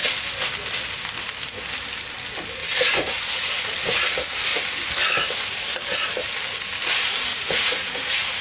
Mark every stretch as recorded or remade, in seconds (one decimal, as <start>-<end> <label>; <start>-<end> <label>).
0.0-2.6 recorded; 2.6-3.5 remade; 3.5-7.3 recorded; 7.3-8.4 remade